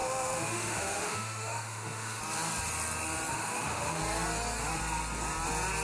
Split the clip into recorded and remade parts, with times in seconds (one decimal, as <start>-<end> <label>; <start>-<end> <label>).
0.0-2.2 remade; 2.2-3.3 recorded; 3.3-4.0 remade; 4.0-5.8 recorded